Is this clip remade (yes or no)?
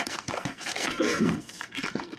yes